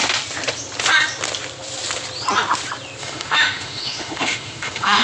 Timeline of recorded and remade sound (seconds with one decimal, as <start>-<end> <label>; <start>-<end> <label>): 0.0-3.0 recorded; 3.0-5.0 remade